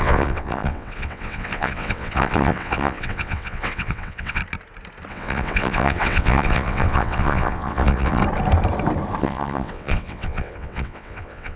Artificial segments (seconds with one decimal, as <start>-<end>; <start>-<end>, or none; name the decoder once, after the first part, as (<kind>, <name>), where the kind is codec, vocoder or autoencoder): 0.0-4.4 (vocoder, WaveNeXt); 5.1-8.2; 9.2-11.6